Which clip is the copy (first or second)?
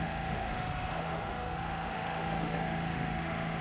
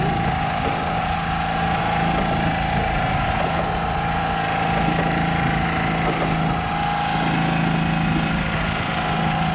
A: first